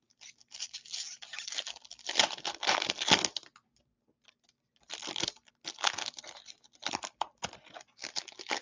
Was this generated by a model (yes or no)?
no